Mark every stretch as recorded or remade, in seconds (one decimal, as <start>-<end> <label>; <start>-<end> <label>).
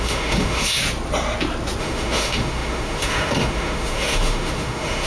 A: 0.0-0.8 remade; 0.8-1.8 recorded; 1.8-5.1 remade